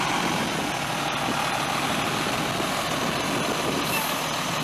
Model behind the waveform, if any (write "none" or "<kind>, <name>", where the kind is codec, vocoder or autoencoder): none